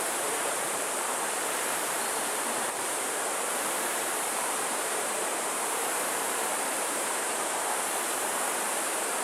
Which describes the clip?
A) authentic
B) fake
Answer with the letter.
B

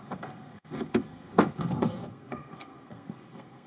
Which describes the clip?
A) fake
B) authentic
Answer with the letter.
A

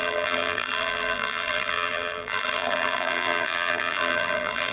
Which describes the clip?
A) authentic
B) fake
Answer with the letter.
B